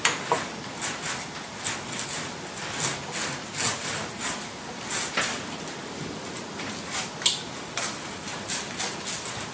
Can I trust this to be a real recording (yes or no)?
yes